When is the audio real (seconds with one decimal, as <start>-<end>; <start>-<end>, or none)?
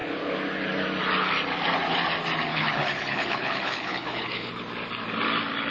0.0-2.5; 4.5-5.7